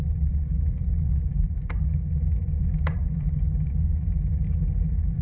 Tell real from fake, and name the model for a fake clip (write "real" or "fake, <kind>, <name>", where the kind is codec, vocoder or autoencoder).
real